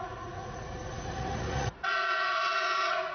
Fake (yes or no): yes